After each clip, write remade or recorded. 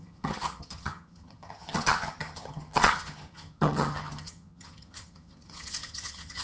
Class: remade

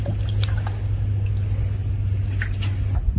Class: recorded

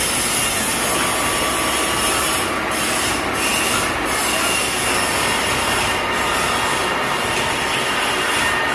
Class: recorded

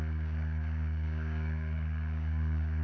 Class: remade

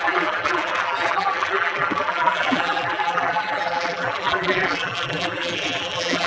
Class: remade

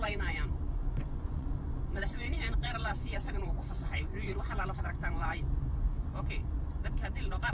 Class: remade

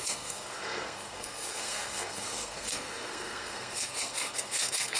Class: remade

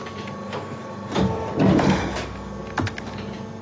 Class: recorded